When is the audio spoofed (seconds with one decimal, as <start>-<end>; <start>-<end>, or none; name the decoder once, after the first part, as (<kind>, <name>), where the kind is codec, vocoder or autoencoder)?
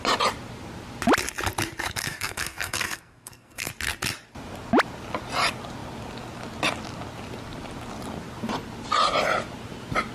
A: 2.0-3.7 (codec, SNAC)